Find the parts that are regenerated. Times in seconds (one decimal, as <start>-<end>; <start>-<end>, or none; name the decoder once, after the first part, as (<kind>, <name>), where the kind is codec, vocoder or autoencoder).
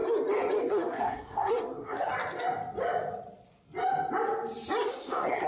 0.6-2.1 (codec, SNAC); 4.9-5.5